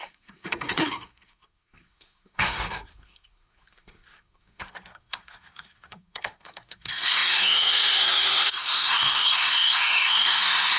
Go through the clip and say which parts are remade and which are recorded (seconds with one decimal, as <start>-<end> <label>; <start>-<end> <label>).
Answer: 0.0-10.8 remade